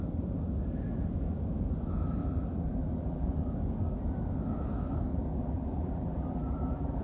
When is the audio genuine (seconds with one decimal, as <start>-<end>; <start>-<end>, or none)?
0.0-2.2; 3.5-5.1